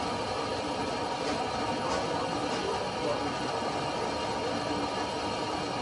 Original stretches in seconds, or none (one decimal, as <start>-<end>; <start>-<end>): 0.0-5.8